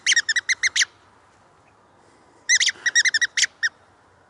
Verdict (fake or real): real